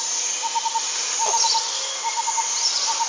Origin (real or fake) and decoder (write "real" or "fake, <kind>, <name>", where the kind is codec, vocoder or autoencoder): real